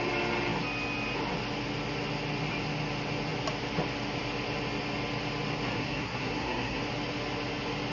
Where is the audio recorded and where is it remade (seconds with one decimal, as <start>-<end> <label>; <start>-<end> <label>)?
0.0-5.8 recorded; 5.8-6.8 remade; 6.8-7.9 recorded